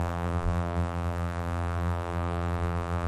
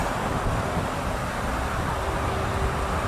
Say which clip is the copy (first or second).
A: first